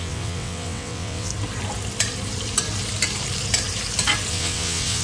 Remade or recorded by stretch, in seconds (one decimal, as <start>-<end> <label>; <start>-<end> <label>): 0.0-1.3 remade; 1.3-4.3 recorded; 4.3-5.0 remade